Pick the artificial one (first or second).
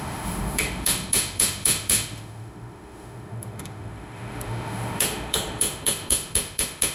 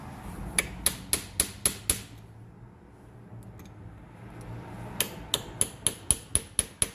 first